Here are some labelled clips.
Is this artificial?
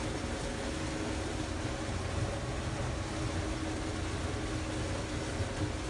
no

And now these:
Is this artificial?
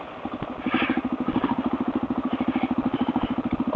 no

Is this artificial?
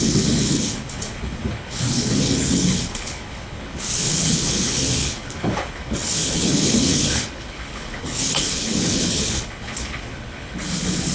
yes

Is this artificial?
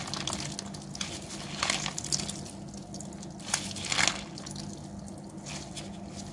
no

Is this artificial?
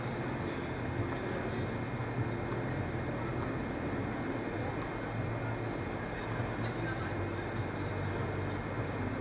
no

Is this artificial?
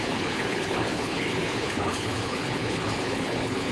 yes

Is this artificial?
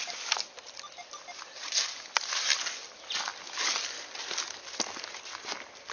no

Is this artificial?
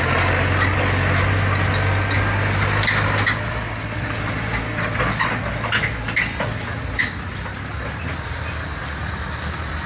no